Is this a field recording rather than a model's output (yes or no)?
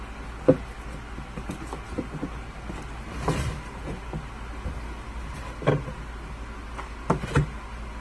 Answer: yes